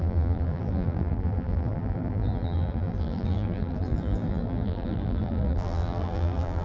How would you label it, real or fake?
fake